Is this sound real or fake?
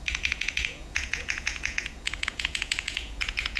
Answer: fake